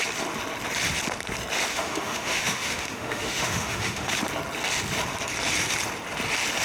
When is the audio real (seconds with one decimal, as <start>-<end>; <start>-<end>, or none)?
0.0-1.7; 4.1-6.6